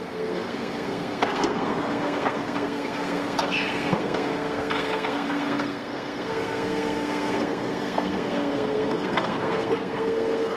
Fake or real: fake